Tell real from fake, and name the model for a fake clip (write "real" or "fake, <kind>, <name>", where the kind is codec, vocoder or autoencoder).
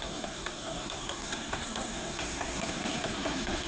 fake, codec, SNAC